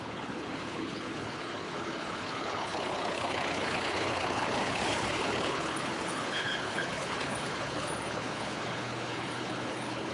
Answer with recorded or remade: remade